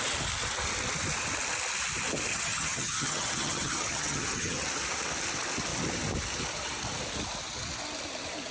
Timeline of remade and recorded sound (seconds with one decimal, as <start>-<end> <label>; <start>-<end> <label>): 0.0-2.3 recorded; 2.3-4.7 remade; 4.7-8.5 recorded